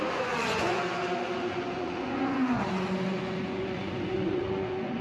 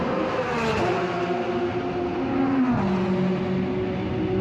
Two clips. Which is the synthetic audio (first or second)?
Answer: first